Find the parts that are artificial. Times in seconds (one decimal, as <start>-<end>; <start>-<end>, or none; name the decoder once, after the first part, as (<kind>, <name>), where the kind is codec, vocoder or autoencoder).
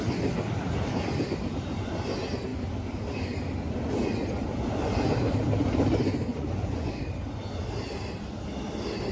6.3-7.0 (vocoder, Vocos)